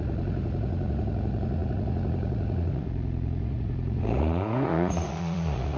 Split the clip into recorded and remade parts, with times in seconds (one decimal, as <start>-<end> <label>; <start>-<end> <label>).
0.0-5.8 remade